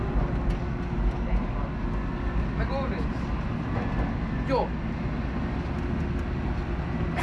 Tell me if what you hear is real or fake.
real